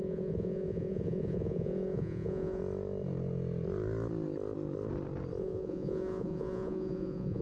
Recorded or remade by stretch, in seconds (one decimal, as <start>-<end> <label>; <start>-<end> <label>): 0.0-2.6 remade; 2.6-5.4 recorded; 5.4-7.4 remade